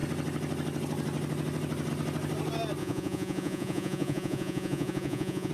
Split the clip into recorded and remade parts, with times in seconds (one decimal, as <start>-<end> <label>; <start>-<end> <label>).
0.0-2.8 recorded; 2.8-5.5 remade